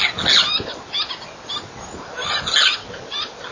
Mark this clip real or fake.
real